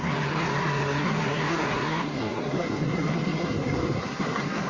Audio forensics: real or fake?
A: fake